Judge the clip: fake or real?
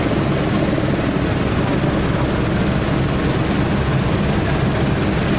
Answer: real